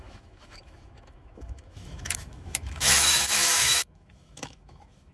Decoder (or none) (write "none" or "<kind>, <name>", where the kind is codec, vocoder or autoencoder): autoencoder, DAC-VAE